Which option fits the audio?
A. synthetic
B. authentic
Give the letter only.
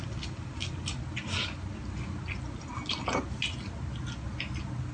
B